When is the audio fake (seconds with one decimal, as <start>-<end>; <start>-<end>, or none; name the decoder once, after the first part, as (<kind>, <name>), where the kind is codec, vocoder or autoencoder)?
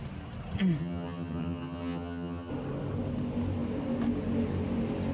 0.8-2.5 (vocoder, HiFi-GAN)